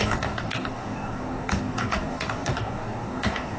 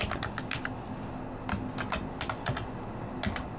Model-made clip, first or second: first